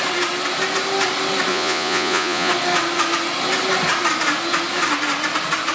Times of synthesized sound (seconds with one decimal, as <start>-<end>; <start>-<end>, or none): 1.5-2.5